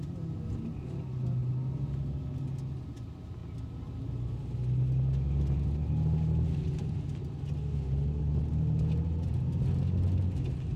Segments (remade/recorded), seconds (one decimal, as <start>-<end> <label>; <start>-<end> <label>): 0.0-10.8 recorded